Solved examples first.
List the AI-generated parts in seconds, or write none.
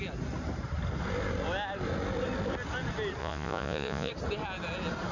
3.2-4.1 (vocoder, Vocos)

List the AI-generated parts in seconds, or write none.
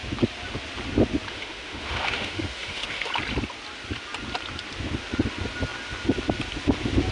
1.3-3.1 (autoencoder, DAC-VAE)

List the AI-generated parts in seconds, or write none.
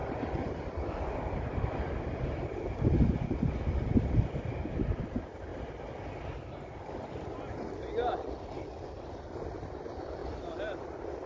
none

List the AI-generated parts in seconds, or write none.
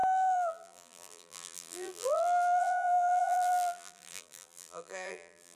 0.0-5.5 (vocoder, BigVGAN v2)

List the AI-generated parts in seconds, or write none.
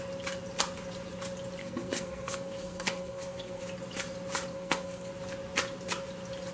1.6-3.6 (codec, SNAC); 4.5-5.1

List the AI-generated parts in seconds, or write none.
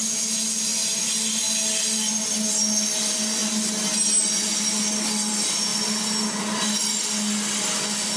none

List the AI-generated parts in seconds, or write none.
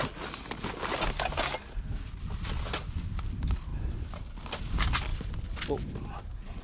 none